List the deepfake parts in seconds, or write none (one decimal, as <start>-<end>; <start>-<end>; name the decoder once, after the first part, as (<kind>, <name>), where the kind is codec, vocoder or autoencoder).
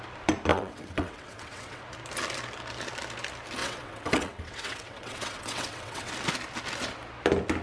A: 0.5-1.8 (vocoder, WaveNeXt); 3.6-6.1